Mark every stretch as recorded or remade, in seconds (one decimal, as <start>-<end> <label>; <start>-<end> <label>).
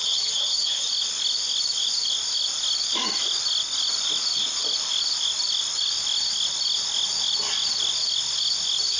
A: 0.0-0.9 remade; 0.9-9.0 recorded